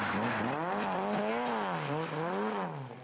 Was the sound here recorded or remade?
recorded